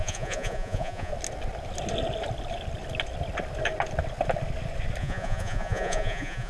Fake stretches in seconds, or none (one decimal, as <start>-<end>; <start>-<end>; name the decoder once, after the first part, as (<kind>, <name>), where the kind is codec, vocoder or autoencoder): 0.0-1.1 (vocoder, Vocos); 5.0-6.5